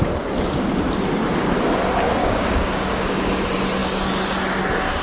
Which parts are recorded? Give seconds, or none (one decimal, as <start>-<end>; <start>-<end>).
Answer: 0.0-2.2; 3.3-5.0